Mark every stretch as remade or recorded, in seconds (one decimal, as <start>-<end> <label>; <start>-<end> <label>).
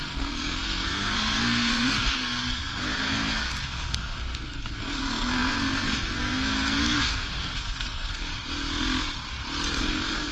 0.0-8.3 remade; 8.3-9.8 recorded; 9.8-10.3 remade